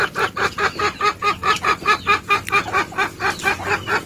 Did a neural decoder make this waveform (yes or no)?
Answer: no